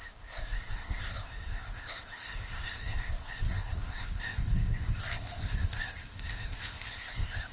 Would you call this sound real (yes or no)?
no